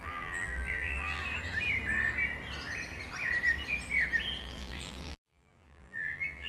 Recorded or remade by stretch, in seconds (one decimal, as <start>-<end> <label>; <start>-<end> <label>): 0.0-1.2 remade; 1.2-4.4 recorded; 4.4-6.5 remade